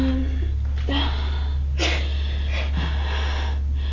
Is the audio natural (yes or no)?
yes